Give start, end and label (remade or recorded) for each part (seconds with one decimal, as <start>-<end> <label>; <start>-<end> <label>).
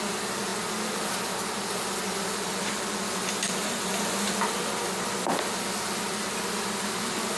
0.0-7.4 recorded